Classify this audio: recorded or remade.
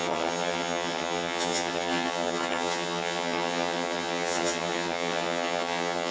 remade